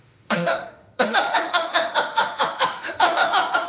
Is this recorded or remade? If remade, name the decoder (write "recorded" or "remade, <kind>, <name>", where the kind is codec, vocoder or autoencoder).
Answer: remade, autoencoder, DAC-VAE